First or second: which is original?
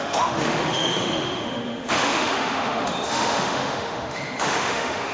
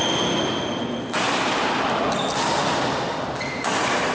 second